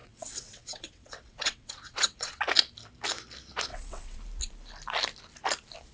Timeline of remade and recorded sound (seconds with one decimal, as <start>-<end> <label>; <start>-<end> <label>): 0.0-2.4 remade; 2.4-3.7 recorded; 3.7-4.2 remade; 4.2-5.9 recorded